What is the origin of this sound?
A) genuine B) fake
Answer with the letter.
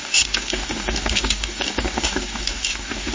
B